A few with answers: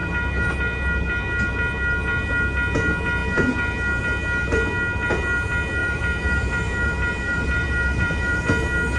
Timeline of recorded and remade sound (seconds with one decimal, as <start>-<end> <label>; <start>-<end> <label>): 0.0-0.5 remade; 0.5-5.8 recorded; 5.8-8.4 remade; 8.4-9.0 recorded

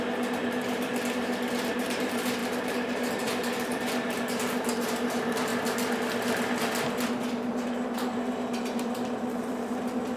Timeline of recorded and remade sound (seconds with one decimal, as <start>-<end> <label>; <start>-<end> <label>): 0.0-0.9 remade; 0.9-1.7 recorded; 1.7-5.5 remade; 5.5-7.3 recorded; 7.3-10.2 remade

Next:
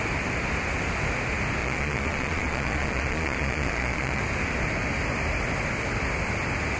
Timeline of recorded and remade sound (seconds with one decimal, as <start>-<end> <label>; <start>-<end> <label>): 0.0-1.6 recorded; 1.6-4.2 remade; 4.2-6.8 recorded

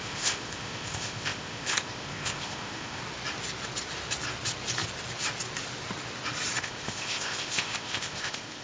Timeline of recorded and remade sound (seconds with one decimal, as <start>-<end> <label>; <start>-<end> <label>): 0.0-3.0 remade; 3.0-6.6 recorded; 6.6-8.6 remade

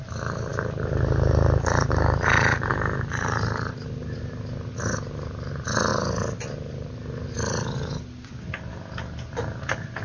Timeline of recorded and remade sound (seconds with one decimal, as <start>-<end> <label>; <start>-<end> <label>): 0.0-0.5 recorded; 0.5-3.7 remade; 3.7-5.9 recorded; 5.9-8.7 remade; 8.7-10.0 recorded